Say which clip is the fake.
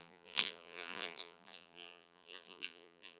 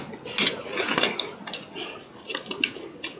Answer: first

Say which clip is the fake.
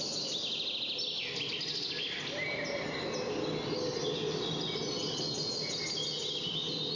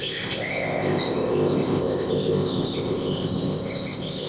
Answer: second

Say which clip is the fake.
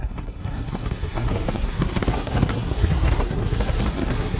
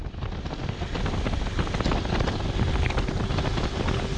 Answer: first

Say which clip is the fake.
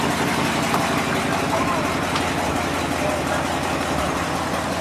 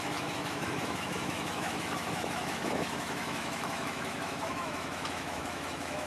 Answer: second